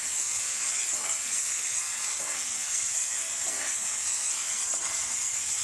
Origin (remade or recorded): remade